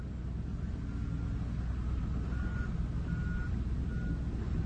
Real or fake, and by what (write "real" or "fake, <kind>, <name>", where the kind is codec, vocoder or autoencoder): real